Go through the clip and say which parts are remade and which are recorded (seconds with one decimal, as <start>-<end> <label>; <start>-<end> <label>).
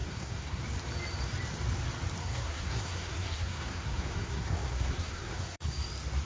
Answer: 0.0-0.6 remade; 0.6-2.2 recorded; 2.2-5.7 remade; 5.7-6.3 recorded